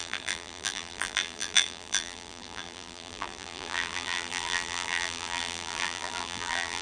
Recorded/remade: remade